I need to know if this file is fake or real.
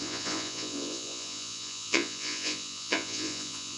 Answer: fake